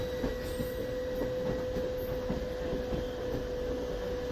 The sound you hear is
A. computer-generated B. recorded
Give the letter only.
B